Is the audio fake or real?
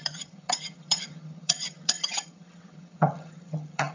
fake